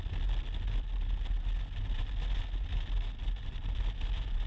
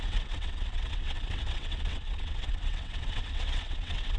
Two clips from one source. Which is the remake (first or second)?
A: second